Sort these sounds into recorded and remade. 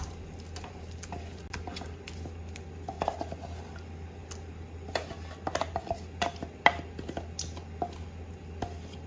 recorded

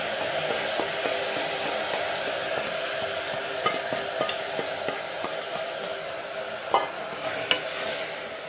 recorded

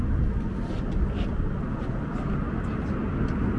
recorded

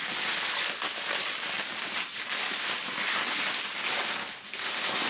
recorded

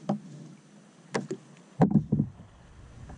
recorded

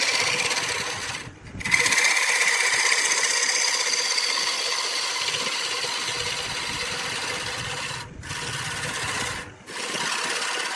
recorded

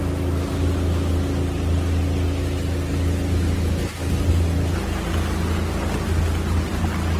recorded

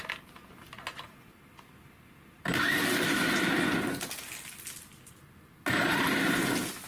recorded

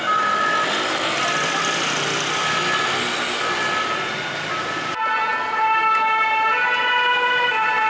recorded